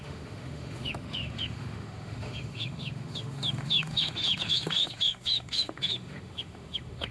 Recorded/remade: remade